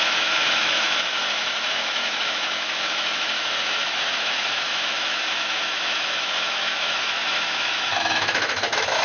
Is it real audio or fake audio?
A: fake